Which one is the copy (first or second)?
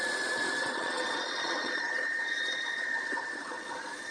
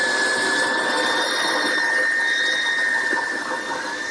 first